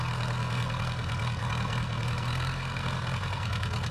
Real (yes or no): no